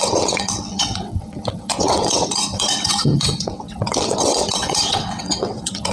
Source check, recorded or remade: remade